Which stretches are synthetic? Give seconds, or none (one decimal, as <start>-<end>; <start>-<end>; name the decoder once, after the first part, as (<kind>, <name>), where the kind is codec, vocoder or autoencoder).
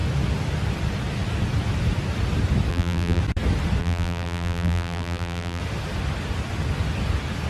2.7-3.2 (vocoder, BigVGAN v2); 3.8-5.6